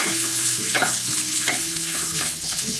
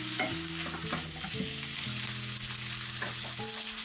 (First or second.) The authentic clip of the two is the second